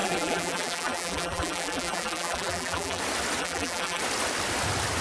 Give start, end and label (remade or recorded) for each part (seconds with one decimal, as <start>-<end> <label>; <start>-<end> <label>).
0.0-3.0 remade; 3.0-3.4 recorded; 3.4-4.0 remade; 4.0-5.0 recorded